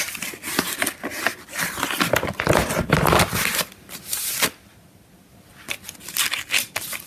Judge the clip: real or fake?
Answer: real